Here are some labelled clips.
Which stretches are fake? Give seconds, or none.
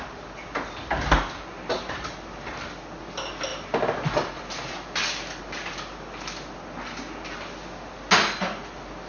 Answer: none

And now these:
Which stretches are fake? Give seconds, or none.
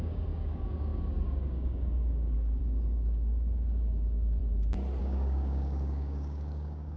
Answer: 0.0-4.4 (codec, DAC); 5.0-7.0